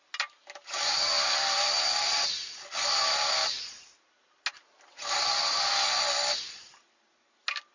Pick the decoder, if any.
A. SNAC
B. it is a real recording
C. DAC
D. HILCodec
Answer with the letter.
B